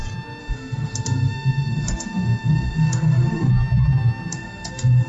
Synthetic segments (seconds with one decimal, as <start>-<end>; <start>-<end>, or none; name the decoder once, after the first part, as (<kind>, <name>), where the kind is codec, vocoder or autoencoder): 0.4-3.5 (codec, SNAC); 4.3-5.1